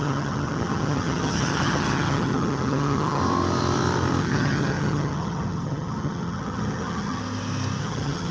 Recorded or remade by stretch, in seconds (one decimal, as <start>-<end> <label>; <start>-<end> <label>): 0.0-3.2 remade; 3.2-4.2 recorded; 4.2-7.2 remade; 7.2-7.8 recorded; 7.8-8.3 remade